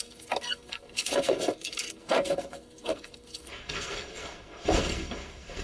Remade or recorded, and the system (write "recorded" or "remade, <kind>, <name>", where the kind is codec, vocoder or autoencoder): remade, codec, SNAC